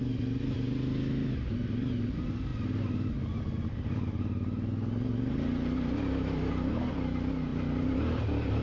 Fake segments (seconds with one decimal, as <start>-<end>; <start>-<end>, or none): none